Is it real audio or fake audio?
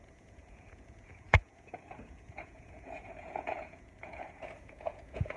fake